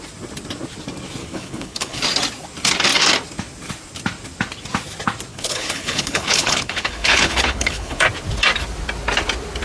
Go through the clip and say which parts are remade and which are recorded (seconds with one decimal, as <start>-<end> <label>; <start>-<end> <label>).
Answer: 0.0-1.2 recorded; 1.2-2.0 remade; 2.0-5.3 recorded; 5.3-8.0 remade; 8.0-9.6 recorded